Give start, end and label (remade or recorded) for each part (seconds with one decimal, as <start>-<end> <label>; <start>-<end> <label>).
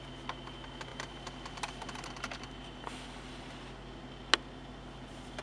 0.0-0.9 recorded; 0.9-3.3 remade; 3.3-5.4 recorded